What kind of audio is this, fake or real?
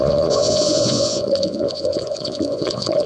fake